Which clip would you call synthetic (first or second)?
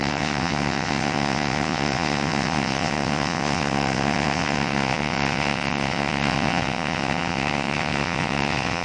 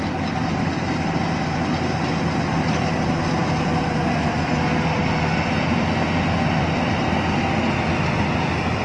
first